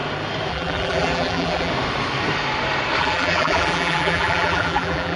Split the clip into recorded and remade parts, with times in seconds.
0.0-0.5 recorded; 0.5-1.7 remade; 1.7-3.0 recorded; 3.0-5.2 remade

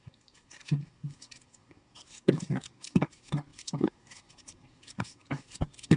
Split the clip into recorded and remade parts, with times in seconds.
0.0-6.0 remade